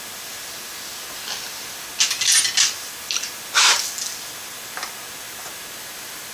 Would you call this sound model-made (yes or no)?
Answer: no